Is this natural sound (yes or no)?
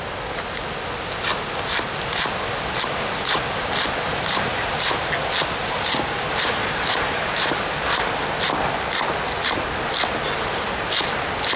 yes